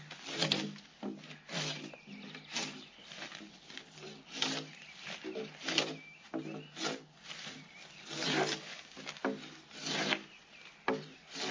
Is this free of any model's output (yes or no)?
yes